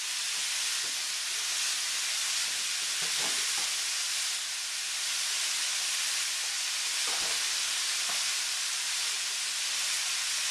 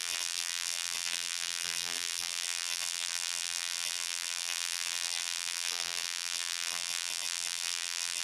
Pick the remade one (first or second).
second